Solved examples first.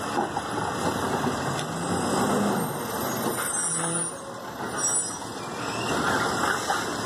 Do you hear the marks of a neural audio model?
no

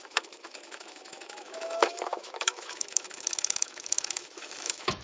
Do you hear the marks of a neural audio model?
yes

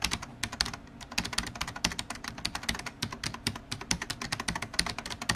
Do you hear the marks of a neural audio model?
no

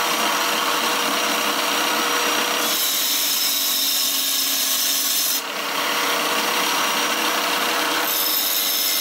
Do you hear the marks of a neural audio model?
yes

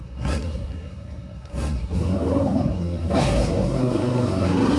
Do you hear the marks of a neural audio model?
yes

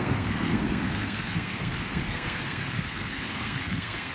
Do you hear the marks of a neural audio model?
yes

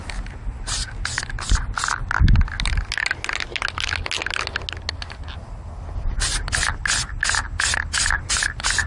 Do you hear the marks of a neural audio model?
no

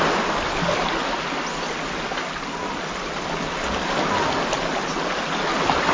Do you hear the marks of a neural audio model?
no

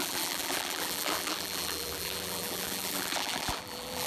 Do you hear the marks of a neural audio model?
yes